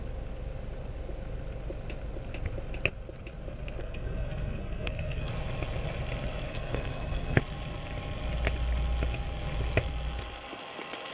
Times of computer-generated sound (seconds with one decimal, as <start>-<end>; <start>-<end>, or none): 3.8-5.3; 6.5-7.4